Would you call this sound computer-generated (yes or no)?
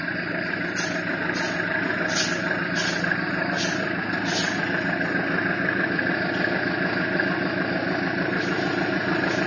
no